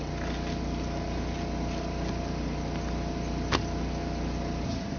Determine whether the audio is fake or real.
real